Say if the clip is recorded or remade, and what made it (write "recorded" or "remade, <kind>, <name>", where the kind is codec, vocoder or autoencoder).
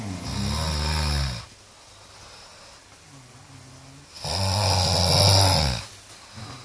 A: recorded